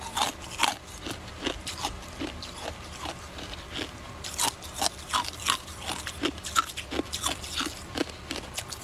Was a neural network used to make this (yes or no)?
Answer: no